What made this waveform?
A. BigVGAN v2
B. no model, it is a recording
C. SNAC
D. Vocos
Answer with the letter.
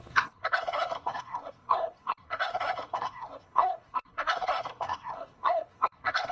C